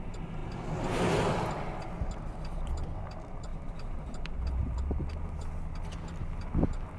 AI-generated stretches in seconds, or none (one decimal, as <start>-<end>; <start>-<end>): 3.5-4.8